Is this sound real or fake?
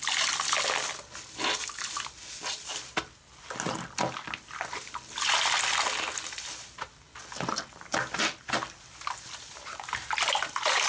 real